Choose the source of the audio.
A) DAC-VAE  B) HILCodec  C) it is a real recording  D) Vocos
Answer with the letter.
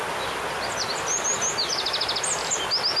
C